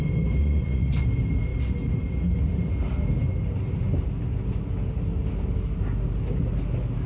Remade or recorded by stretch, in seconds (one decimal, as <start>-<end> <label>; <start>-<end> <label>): 0.0-0.4 recorded; 0.4-1.0 remade; 1.0-7.1 recorded